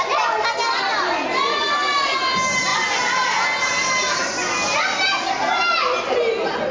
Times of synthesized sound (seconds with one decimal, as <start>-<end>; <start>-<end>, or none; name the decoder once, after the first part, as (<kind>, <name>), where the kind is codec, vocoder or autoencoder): none